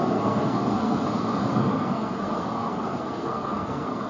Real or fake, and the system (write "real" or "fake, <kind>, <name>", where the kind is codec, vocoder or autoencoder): fake, codec, SNAC